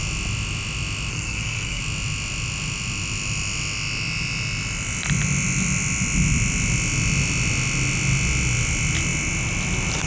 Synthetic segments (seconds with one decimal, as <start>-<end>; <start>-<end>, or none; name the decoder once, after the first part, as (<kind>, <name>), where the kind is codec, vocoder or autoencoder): 1.1-1.8 (codec, SNAC)